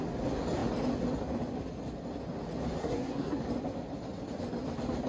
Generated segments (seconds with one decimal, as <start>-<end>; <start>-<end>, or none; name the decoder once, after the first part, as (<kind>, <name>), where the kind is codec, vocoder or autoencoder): 2.8-3.4 (codec, SNAC)